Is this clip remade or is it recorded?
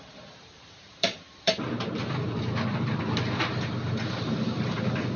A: remade